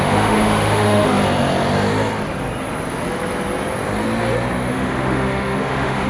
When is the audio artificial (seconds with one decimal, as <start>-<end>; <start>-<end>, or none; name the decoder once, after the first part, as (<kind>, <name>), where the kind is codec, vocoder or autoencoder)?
0.0-1.2 (autoencoder, DAC-VAE); 4.7-6.1